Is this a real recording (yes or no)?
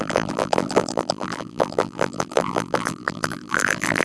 no